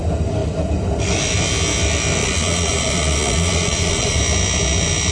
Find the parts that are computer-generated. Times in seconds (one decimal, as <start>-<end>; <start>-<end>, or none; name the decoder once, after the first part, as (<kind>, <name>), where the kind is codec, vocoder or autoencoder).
2.2-4.2 (vocoder, Vocos)